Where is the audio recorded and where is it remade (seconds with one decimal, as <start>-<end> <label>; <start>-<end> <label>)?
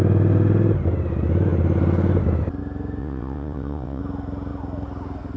0.0-3.0 recorded; 3.0-4.0 remade; 4.0-5.4 recorded